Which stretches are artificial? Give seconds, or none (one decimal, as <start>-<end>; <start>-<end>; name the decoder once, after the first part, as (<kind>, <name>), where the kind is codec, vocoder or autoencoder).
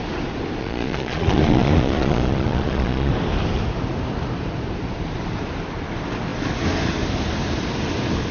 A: 0.6-3.1 (vocoder, Vocos)